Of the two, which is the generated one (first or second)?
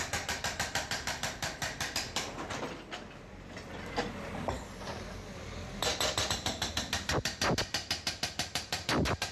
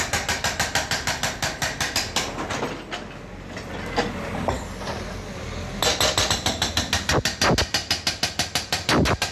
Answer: first